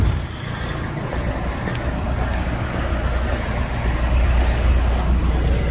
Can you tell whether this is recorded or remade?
recorded